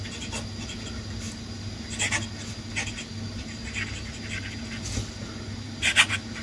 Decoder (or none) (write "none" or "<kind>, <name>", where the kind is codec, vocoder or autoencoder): none